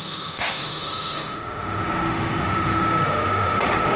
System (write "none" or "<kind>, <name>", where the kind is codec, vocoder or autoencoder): autoencoder, DAC-VAE